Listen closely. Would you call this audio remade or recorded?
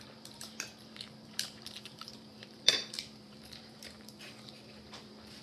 remade